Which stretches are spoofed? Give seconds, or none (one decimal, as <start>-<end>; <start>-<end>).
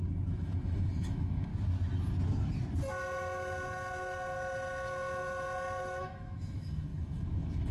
0.0-1.5; 5.8-7.7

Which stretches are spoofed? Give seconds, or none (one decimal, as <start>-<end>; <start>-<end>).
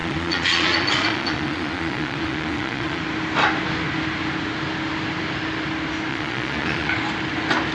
0.0-3.0; 6.1-6.9